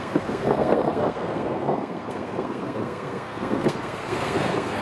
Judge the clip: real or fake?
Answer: fake